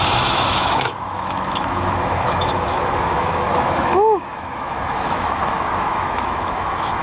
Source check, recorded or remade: remade